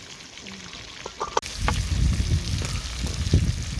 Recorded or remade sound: recorded